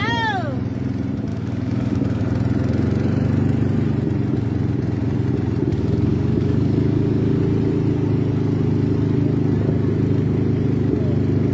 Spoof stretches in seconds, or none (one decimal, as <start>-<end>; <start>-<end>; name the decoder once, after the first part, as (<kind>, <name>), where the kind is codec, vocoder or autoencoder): 1.3-2.2 (codec, DAC); 5.7-7.4